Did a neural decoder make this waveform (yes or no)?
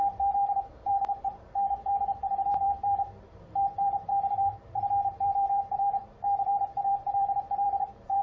yes